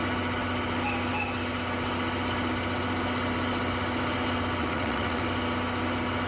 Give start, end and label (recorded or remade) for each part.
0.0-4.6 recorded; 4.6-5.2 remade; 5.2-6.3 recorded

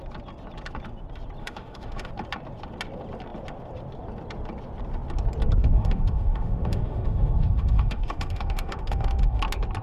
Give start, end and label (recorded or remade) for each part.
0.0-1.4 recorded; 1.4-2.1 remade; 2.1-5.6 recorded; 5.6-9.4 remade; 9.4-9.8 recorded

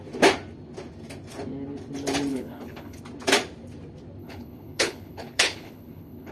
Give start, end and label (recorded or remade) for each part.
0.0-2.3 recorded; 2.3-3.0 remade; 3.0-4.2 recorded; 4.2-6.3 remade